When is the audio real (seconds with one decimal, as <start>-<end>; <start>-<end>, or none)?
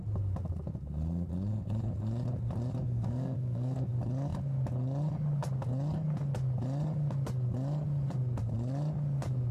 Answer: 0.0-2.8; 3.9-9.5